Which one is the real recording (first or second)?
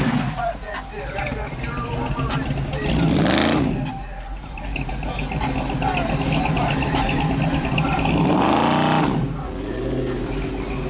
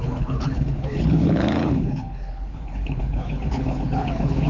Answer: first